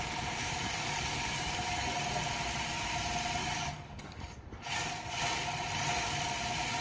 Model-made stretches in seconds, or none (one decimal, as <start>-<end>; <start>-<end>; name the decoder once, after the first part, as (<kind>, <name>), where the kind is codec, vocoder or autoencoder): 0.4-1.9 (codec, DAC); 3.4-5.1